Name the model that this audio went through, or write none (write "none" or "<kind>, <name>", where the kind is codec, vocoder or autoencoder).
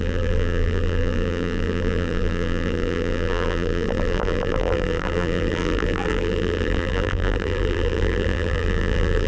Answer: vocoder, BigVGAN v2